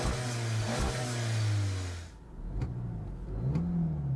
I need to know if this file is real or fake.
real